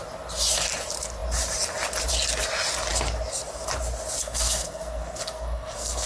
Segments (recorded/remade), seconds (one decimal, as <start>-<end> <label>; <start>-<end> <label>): 0.0-4.2 recorded; 4.2-6.1 remade